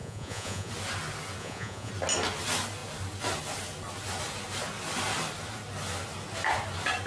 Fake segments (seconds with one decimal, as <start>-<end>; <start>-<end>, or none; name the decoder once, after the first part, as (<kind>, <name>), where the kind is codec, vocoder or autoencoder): 0.0-0.7 (vocoder, Vocos); 1.4-1.9